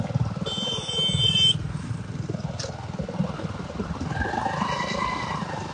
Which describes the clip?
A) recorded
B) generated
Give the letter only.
A